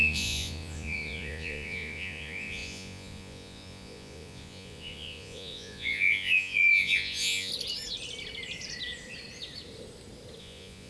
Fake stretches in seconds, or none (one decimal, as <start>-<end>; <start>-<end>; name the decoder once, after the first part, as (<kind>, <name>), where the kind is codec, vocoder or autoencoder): 0.0-7.5 (vocoder, Vocos); 10.4-10.9